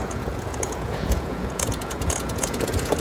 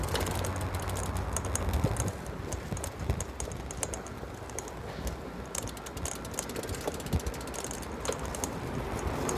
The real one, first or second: second